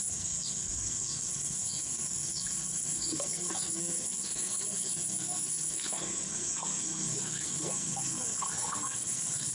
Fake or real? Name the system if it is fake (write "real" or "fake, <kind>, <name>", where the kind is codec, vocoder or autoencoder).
fake, codec, SNAC